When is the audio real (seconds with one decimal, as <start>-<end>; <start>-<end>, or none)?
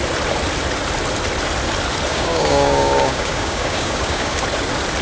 0.0-2.1; 4.4-5.0